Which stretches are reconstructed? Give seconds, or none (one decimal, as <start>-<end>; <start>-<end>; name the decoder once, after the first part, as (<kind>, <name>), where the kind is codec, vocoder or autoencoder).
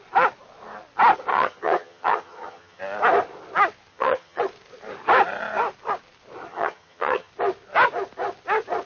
1.3-2.8 (vocoder, HiFi-GAN); 3.9-4.4; 6.5-7.3